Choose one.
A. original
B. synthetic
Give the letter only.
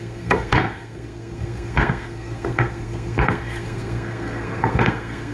B